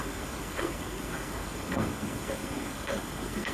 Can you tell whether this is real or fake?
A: fake